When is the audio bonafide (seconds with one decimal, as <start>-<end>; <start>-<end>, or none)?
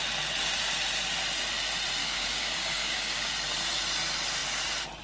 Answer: 0.0-2.0; 3.3-5.0